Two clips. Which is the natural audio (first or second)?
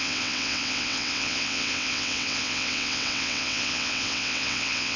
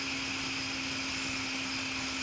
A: second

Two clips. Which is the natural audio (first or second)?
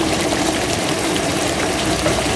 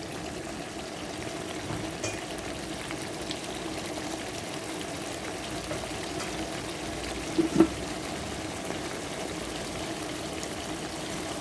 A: second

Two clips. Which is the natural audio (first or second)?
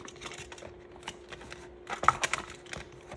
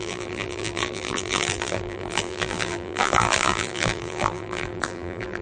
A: first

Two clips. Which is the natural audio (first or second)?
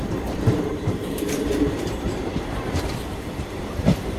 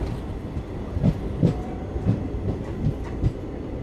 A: second